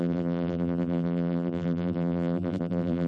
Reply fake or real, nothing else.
fake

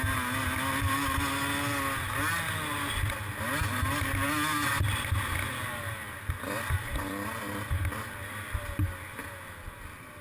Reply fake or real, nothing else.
real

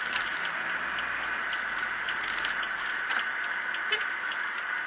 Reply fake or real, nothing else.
real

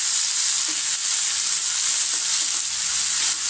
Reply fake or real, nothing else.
real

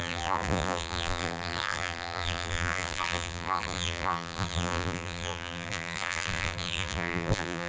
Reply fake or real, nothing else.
fake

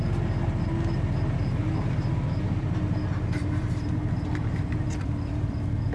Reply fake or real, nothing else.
real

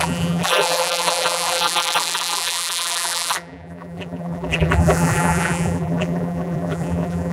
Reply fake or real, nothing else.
fake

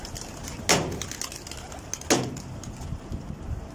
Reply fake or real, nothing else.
real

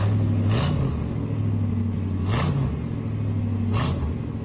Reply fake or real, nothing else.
real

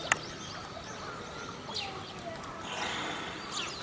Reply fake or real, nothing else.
real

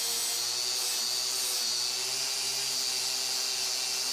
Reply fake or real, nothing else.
real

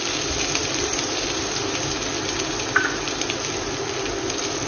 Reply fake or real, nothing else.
fake